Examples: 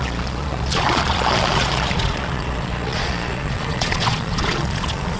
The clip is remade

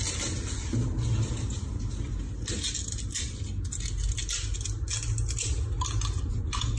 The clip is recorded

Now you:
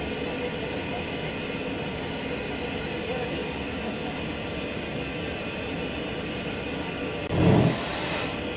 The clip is recorded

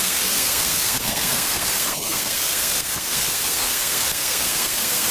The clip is remade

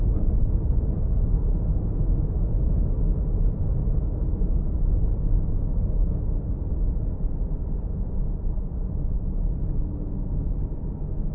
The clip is recorded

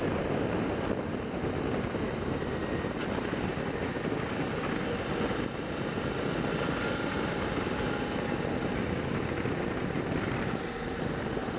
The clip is recorded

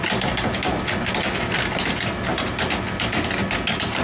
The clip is recorded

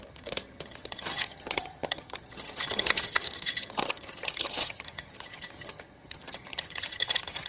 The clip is remade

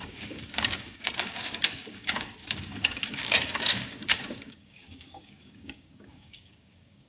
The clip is remade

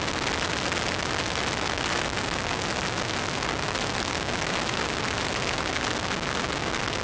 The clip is recorded